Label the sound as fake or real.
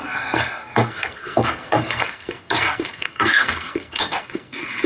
fake